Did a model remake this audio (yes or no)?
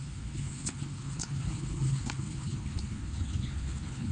yes